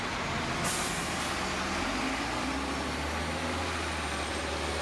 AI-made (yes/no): no